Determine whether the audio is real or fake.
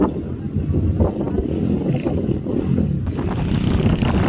real